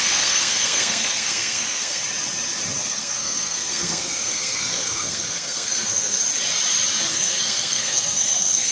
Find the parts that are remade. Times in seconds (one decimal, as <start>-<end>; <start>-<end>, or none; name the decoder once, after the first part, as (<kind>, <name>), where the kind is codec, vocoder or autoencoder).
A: 0.0-2.0 (codec, SNAC); 2.8-6.2; 7.1-8.7